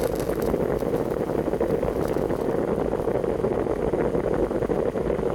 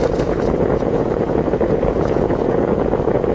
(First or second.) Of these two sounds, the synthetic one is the second